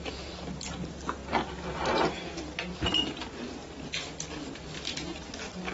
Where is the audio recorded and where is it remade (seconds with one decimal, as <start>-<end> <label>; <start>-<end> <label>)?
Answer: 0.0-5.7 recorded

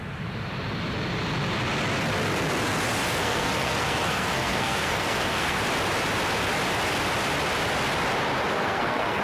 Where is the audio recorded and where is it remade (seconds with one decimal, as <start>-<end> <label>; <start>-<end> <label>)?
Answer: 0.0-3.2 recorded; 3.2-5.6 remade; 5.6-8.5 recorded; 8.5-9.2 remade

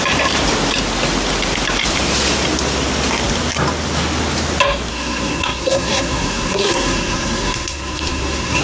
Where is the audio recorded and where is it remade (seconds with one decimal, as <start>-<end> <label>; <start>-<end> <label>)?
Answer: 0.0-4.9 recorded; 4.9-8.6 remade